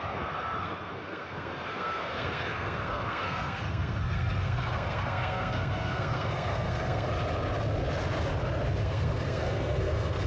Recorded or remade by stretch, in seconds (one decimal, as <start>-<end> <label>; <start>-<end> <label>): 0.0-7.1 remade; 7.1-8.8 recorded; 8.8-10.3 remade